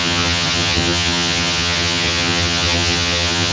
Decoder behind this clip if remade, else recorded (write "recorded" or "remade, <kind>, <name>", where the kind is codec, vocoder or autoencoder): remade, vocoder, HiFi-GAN